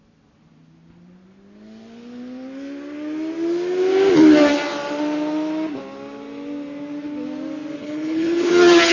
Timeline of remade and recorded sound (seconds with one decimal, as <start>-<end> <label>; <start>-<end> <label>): 0.0-7.8 recorded; 7.8-8.5 remade; 8.5-8.9 recorded